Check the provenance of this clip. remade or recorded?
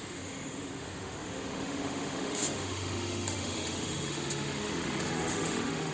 remade